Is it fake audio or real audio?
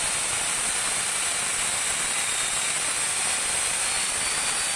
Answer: real